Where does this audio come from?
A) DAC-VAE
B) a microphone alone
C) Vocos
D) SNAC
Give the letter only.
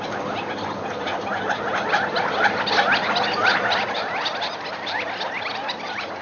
B